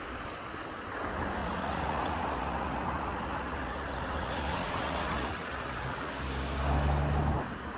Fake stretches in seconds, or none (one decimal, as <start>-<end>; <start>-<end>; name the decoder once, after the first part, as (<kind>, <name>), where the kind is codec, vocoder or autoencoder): 1.4-6.1 (vocoder, Vocos)